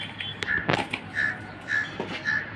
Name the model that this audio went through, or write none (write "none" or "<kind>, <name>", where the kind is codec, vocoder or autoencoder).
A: none